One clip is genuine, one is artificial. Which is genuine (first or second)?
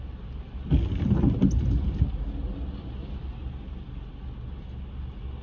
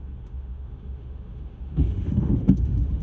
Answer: first